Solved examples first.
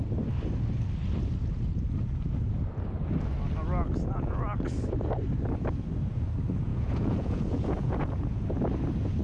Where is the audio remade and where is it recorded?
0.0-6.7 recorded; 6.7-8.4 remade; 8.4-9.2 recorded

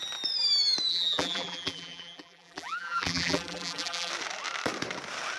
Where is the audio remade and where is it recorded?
0.0-0.9 recorded; 0.9-4.1 remade; 4.1-5.4 recorded